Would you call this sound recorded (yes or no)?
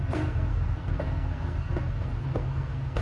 no